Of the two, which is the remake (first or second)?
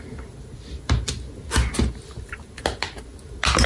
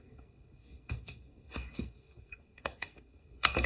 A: second